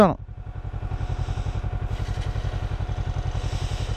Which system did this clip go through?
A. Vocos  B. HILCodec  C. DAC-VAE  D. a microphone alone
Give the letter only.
D